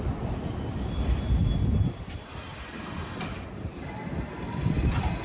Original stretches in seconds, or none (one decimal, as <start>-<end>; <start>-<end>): 0.0-5.2